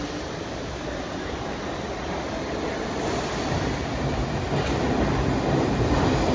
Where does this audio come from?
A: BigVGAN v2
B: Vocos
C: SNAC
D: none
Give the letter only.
D